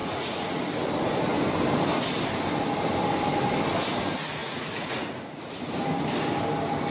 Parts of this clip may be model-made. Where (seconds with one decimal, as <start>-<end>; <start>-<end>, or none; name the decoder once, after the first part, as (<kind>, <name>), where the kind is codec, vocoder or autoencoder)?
0.0-0.6 (vocoder, Vocos); 4.4-5.1

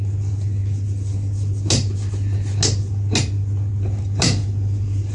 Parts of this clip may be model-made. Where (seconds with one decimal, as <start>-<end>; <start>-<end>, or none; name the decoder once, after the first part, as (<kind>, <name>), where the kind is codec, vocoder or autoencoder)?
none

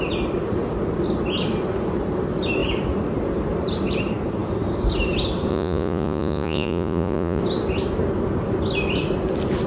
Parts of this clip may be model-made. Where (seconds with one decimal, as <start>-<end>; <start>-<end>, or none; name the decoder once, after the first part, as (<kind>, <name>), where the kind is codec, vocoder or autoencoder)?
5.5-7.4 (vocoder, Vocos)